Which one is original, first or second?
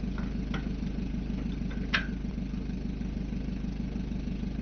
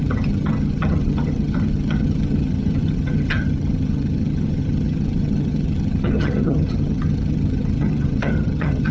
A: first